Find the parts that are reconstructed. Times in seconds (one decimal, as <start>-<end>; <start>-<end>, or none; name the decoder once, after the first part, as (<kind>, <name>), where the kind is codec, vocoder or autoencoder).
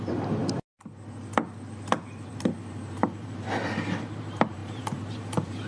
0.0-0.4 (vocoder, BigVGAN v2); 2.3-5.7